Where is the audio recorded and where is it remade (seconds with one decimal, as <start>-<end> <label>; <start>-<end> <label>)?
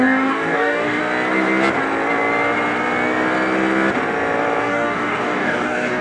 0.0-1.0 remade; 1.0-4.6 recorded; 4.6-6.0 remade